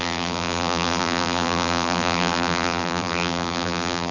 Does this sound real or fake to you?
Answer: fake